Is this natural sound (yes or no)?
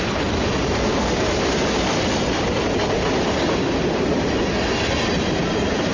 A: yes